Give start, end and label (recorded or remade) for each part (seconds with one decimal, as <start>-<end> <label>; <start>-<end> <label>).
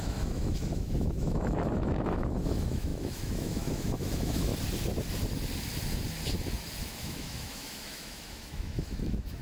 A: 0.0-4.5 remade; 4.5-6.8 recorded; 6.8-9.4 remade